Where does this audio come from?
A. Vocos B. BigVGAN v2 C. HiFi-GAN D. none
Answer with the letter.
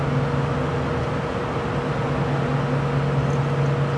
D